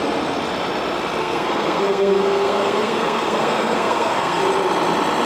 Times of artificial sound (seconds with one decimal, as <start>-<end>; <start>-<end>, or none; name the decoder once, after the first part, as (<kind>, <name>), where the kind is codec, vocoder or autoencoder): 1.2-4.4 (codec, SNAC)